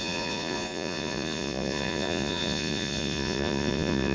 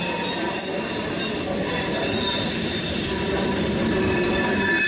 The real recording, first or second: second